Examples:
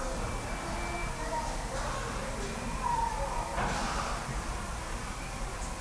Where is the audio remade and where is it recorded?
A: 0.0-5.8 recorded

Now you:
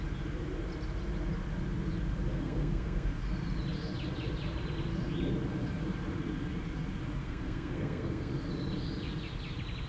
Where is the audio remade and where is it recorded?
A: 0.0-2.3 recorded; 2.3-3.3 remade; 3.3-7.2 recorded; 7.2-8.3 remade; 8.3-9.9 recorded